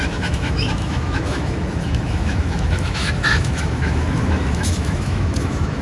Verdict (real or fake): fake